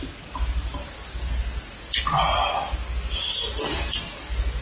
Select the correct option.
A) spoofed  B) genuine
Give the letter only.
B